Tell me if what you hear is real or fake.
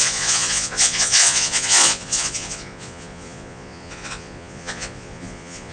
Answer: fake